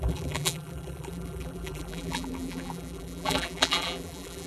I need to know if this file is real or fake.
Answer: fake